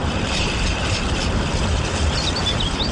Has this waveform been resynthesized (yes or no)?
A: yes